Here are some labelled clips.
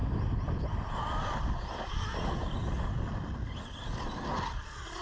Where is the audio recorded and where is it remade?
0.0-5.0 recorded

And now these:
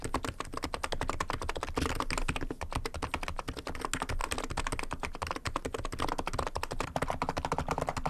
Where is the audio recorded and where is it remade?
0.0-8.1 recorded

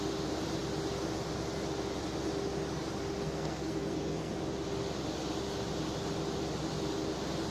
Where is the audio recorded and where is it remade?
0.0-3.2 recorded; 3.2-4.3 remade; 4.3-7.5 recorded

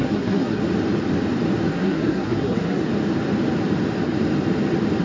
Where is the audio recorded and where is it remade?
0.0-0.6 remade; 0.6-1.7 recorded; 1.7-2.8 remade; 2.8-5.0 recorded

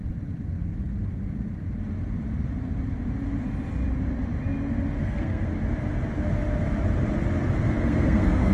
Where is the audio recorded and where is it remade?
0.0-5.0 recorded; 5.0-5.5 remade; 5.5-7.8 recorded; 7.8-8.5 remade

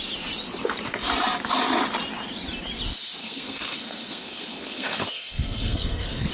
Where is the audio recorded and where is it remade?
0.0-3.2 recorded; 3.2-6.3 remade

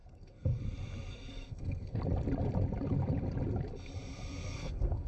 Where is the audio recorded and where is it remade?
0.0-0.6 remade; 0.6-1.3 recorded; 1.3-2.0 remade; 2.0-4.3 recorded; 4.3-5.1 remade